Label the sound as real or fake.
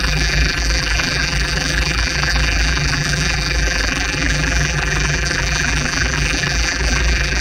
fake